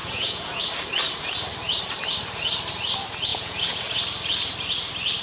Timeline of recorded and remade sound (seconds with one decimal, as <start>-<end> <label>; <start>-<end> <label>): 0.0-0.6 remade; 0.6-3.3 recorded; 3.3-3.8 remade; 3.8-5.2 recorded